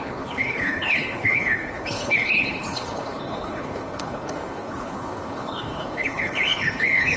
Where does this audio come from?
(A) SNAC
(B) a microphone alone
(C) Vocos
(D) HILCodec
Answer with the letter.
D